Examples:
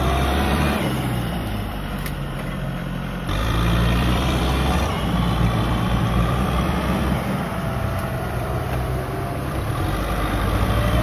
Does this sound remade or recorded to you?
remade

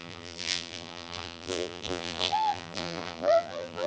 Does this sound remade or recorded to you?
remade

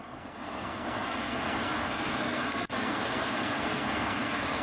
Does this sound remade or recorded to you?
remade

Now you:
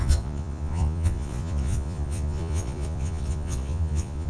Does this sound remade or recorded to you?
remade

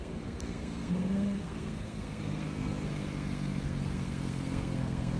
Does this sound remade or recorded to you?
remade